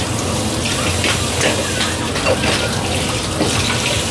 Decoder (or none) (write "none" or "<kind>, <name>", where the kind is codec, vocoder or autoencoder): none